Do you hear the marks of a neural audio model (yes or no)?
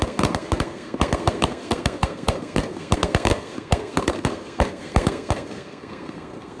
yes